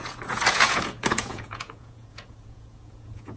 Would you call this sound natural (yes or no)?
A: no